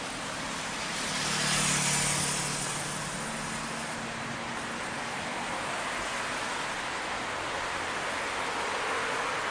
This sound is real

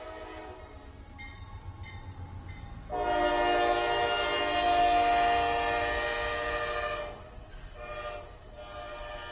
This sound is real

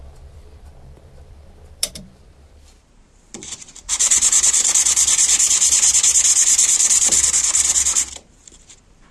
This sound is fake